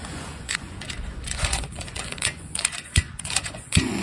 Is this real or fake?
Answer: fake